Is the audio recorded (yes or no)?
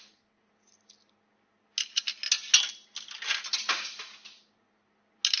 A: yes